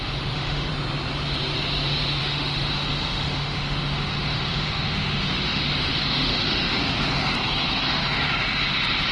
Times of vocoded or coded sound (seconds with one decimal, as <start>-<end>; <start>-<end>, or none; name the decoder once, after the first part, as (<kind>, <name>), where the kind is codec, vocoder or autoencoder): 0.0-0.7 (autoencoder, DAC-VAE); 2.2-6.8